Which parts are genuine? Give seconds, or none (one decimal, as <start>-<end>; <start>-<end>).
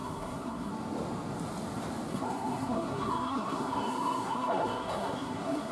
0.7-2.1